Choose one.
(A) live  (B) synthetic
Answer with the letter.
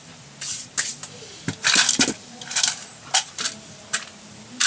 A